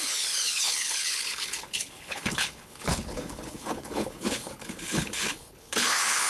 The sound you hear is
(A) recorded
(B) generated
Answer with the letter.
B